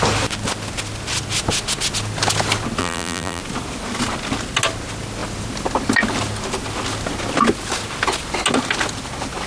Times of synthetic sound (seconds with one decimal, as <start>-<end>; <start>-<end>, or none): 2.8-3.4

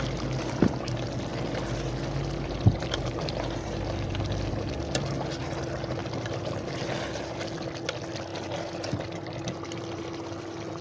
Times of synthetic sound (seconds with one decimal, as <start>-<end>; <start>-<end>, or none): 1.3-4.5; 6.0-6.7; 8.3-10.2

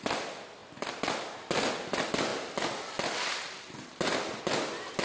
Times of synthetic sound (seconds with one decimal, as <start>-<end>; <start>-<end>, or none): none